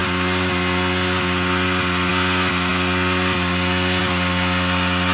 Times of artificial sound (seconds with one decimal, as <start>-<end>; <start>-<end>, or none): none

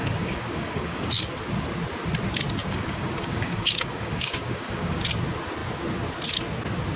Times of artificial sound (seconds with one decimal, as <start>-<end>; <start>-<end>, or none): 0.0-1.2; 2.6-5.1

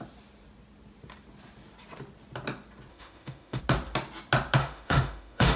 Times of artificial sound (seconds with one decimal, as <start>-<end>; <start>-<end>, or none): 2.9-3.6; 4.6-5.6

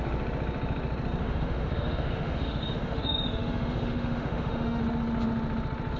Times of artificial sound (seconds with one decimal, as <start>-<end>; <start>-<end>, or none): 1.2-4.8

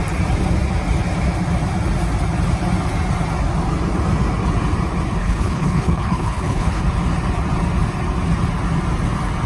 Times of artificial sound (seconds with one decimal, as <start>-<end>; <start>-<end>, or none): 5.2-6.8

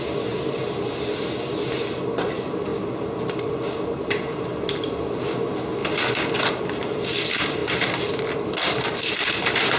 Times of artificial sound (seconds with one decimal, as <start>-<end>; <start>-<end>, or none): none

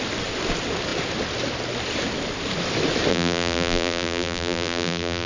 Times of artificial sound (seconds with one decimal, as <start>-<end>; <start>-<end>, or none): 3.1-5.3

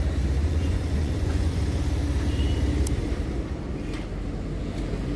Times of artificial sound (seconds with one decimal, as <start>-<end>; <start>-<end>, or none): 0.4-1.6